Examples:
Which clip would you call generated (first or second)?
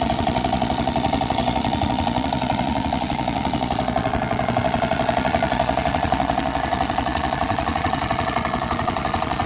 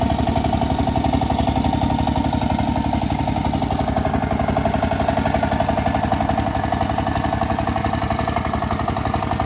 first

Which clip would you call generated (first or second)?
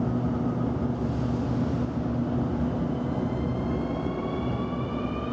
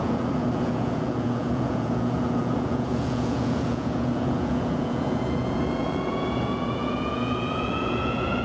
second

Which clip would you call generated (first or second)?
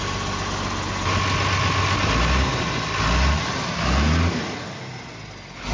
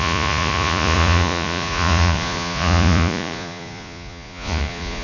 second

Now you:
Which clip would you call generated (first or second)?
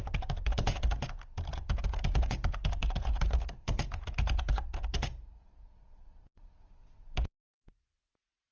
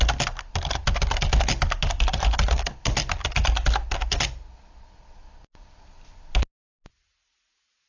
first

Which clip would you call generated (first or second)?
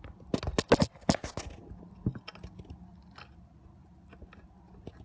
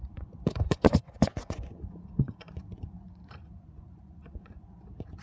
second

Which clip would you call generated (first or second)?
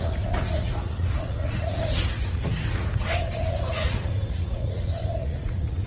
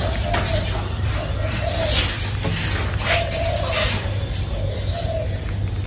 first